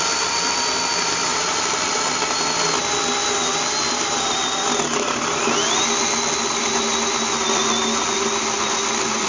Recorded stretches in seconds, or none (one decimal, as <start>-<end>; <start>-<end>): 1.9-6.4; 6.9-8.4